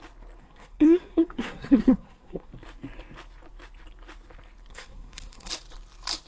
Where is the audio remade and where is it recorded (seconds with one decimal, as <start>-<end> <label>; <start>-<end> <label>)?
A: 0.0-0.4 recorded; 0.4-2.5 remade; 2.5-4.7 recorded; 4.7-5.5 remade; 5.5-6.3 recorded